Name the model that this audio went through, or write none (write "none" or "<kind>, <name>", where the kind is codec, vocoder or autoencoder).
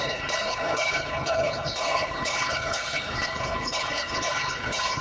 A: codec, HILCodec